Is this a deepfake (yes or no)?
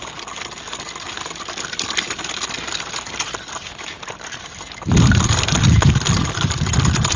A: yes